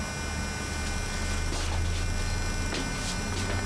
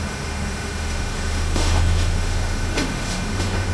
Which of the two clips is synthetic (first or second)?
second